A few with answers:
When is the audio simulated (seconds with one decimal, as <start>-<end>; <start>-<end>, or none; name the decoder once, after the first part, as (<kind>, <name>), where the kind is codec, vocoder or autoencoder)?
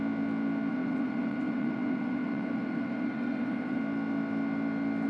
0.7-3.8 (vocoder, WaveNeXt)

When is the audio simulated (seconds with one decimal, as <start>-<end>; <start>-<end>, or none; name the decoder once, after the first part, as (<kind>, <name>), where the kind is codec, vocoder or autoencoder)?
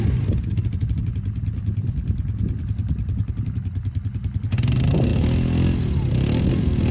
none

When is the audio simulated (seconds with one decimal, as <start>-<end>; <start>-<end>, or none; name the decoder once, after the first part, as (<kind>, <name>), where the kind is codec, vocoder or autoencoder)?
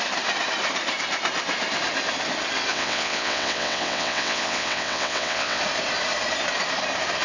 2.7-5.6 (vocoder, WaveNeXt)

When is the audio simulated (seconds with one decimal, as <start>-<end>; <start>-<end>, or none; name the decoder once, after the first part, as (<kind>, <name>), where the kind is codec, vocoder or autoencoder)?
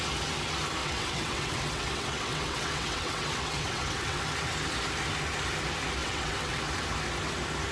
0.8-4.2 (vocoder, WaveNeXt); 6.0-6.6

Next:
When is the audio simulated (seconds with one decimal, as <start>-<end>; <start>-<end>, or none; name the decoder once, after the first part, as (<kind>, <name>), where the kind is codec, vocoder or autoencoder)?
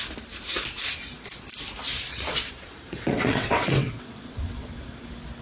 2.1-4.7 (vocoder, WaveNeXt)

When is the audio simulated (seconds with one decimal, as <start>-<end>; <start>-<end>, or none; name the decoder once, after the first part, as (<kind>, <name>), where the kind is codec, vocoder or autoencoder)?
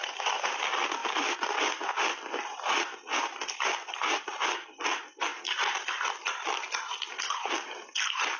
none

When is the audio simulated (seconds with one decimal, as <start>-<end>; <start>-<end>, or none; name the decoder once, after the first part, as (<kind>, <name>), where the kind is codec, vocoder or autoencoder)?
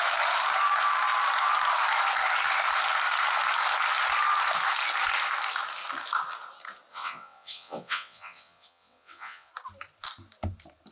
6.9-9.5 (vocoder, WaveNeXt)